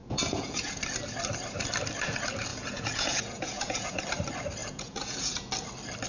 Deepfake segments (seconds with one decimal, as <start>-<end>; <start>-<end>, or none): 0.0-0.8; 2.5-4.0; 4.6-5.5